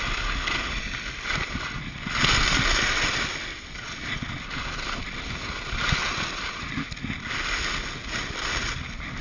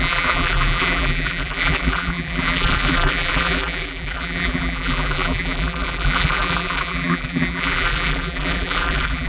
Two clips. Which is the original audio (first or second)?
first